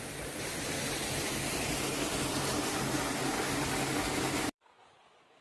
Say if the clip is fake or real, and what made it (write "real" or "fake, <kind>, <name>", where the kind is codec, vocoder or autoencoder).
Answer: real